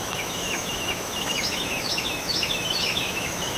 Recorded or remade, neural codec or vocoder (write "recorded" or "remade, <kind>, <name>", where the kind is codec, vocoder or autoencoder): remade, autoencoder, DAC-VAE